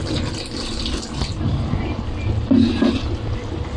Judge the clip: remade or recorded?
recorded